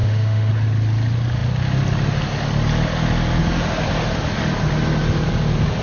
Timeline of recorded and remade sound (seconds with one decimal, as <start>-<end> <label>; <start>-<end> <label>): 0.0-0.5 remade; 0.5-5.8 recorded